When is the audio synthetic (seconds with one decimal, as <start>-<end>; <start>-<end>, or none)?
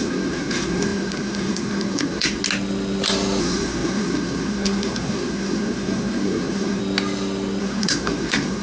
0.0-2.4; 3.4-6.8; 7.6-8.6